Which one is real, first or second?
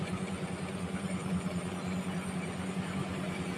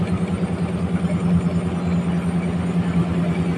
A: second